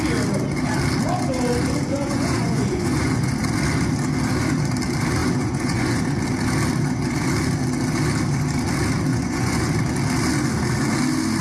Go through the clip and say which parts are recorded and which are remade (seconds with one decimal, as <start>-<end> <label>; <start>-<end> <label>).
0.0-1.9 recorded; 1.9-3.3 remade; 3.3-5.2 recorded; 5.2-6.0 remade; 6.0-9.1 recorded; 9.1-9.6 remade; 9.6-11.4 recorded